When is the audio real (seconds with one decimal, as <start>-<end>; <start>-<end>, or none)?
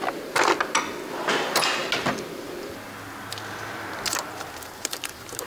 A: 0.0-5.5